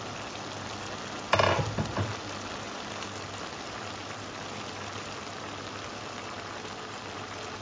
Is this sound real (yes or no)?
yes